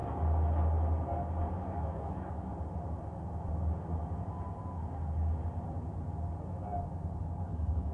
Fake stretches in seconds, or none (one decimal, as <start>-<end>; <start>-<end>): 1.5-2.5; 7.2-7.9